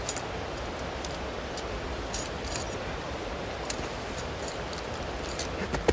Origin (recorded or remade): recorded